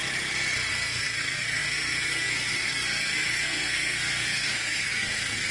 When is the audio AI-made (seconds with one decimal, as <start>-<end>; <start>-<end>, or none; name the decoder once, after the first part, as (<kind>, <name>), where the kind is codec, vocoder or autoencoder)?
0.7-5.5 (codec, SNAC)